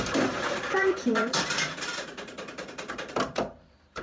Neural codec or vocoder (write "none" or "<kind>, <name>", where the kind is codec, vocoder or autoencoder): vocoder, BigVGAN v2